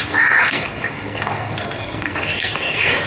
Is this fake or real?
fake